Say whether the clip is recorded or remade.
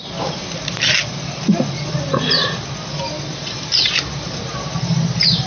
recorded